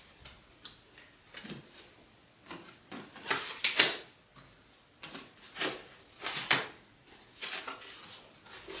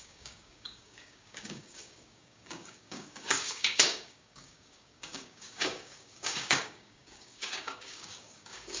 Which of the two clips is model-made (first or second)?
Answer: second